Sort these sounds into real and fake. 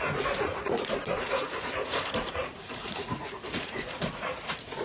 fake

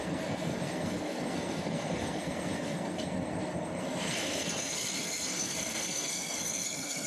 fake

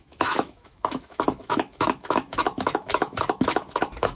fake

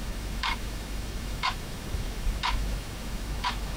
fake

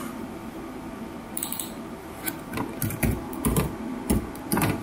real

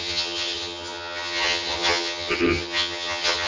fake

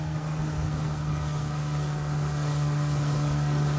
fake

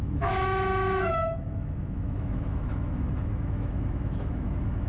fake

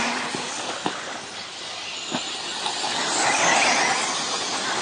real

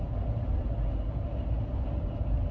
real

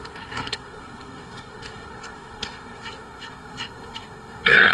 fake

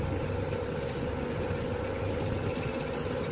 real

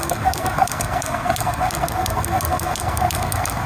fake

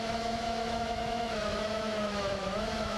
fake